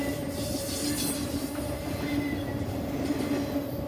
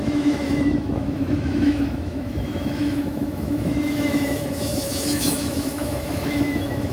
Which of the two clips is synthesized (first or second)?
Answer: second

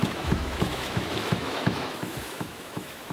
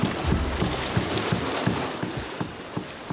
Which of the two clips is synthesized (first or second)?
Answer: first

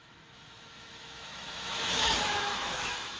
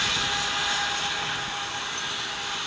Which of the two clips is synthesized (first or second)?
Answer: first